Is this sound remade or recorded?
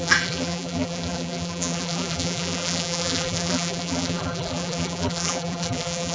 remade